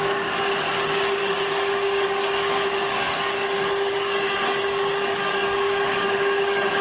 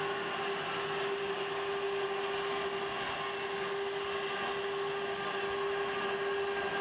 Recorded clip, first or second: second